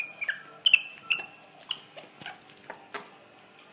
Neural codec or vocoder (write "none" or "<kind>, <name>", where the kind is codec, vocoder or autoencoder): none